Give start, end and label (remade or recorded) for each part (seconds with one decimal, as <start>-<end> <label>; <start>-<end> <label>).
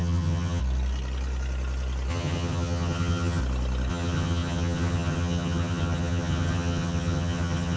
0.0-0.6 remade; 0.6-2.1 recorded; 2.1-3.4 remade; 3.4-3.9 recorded; 3.9-7.8 remade